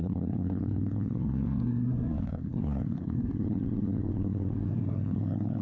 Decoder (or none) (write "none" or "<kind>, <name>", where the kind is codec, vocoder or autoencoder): codec, SNAC